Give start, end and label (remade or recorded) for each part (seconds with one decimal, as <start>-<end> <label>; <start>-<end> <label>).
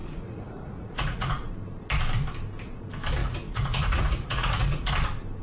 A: 0.0-1.5 remade; 1.5-3.2 recorded; 3.2-4.9 remade; 4.9-5.4 recorded